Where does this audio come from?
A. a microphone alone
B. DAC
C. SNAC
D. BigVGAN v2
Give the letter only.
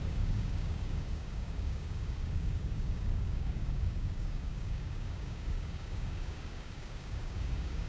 B